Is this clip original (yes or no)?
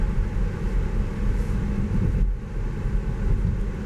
yes